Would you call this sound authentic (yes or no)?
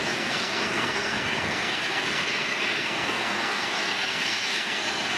no